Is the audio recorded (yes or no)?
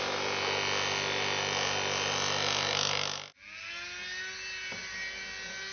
yes